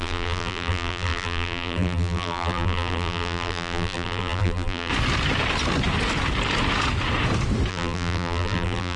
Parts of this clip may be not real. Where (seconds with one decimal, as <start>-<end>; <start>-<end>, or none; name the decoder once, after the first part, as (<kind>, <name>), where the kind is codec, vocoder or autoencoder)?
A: 0.0-4.9 (vocoder, BigVGAN v2); 7.7-9.0